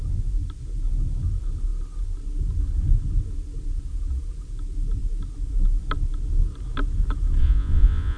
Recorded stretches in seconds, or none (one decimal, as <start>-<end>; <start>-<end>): 0.0-7.4